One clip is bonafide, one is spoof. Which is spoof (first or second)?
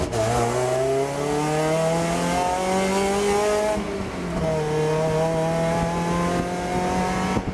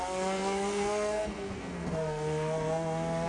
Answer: second